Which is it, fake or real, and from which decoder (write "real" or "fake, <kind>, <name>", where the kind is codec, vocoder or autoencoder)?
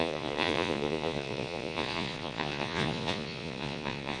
fake, vocoder, Vocos